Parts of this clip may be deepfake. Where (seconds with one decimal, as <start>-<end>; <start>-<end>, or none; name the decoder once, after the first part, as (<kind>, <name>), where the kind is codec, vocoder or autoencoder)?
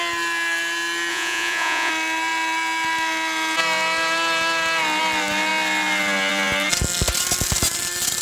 1.1-1.9 (vocoder, Vocos)